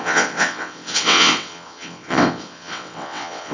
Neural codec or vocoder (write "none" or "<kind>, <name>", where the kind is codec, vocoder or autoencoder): vocoder, WaveNeXt